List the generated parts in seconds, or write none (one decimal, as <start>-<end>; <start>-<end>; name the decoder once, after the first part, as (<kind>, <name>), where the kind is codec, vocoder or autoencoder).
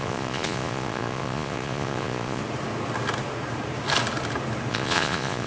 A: 0.0-2.4 (vocoder, Vocos); 4.7-5.5